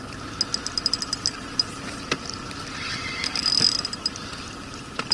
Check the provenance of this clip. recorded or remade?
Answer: recorded